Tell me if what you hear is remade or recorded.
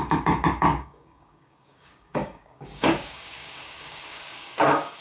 remade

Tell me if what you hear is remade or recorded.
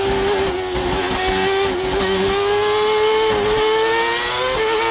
recorded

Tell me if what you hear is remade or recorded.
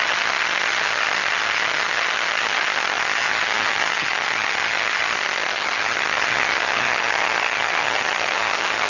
remade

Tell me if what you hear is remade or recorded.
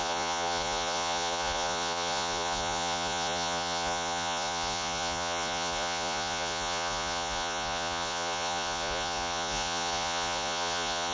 remade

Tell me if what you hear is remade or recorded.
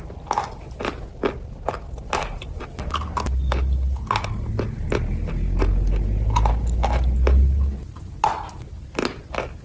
recorded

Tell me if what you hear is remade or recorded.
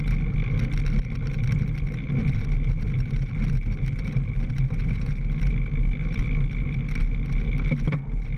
recorded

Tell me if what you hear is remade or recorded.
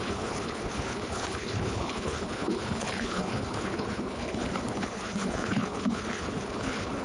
remade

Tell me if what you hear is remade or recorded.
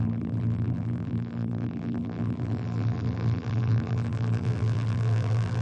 remade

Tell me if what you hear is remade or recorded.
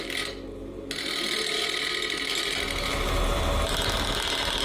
recorded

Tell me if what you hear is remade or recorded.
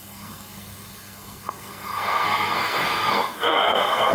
remade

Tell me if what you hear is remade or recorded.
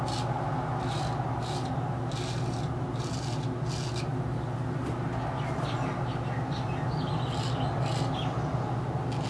recorded